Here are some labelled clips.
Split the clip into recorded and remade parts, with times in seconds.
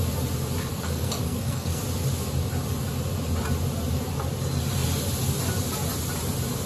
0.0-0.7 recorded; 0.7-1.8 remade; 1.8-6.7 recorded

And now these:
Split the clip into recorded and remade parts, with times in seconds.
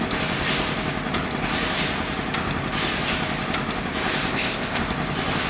0.0-4.3 recorded; 4.3-4.8 remade; 4.8-5.5 recorded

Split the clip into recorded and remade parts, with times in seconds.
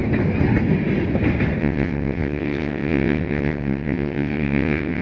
0.0-1.6 recorded; 1.6-5.0 remade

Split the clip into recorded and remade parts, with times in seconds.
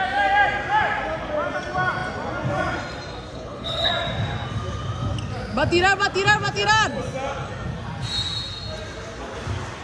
0.0-3.3 recorded; 3.3-3.9 remade; 3.9-9.8 recorded